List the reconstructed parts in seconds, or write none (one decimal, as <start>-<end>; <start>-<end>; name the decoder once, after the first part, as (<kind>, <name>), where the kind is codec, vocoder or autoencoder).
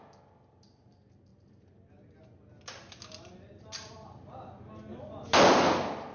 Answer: none